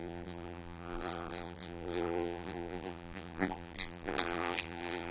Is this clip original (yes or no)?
no